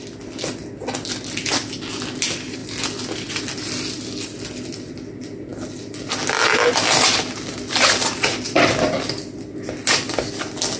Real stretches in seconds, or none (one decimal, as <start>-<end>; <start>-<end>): 0.0-10.8